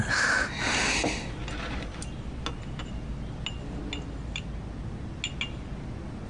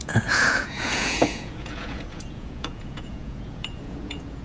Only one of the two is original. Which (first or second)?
first